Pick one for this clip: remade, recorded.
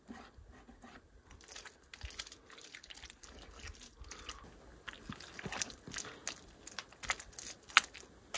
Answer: recorded